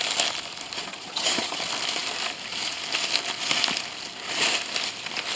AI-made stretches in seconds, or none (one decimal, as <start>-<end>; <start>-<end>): 0.9-1.6